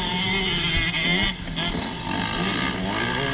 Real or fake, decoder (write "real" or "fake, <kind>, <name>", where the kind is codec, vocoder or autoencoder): real